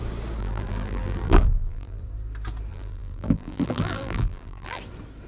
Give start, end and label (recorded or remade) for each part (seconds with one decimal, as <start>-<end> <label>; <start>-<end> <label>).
0.0-0.4 recorded; 0.4-2.0 remade; 2.0-2.7 recorded; 2.7-4.8 remade; 4.8-5.3 recorded